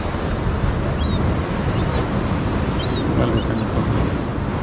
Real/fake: real